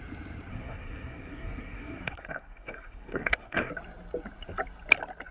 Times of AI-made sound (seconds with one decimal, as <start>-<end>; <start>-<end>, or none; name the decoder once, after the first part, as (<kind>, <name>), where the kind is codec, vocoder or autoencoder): 0.5-3.7 (codec, SNAC)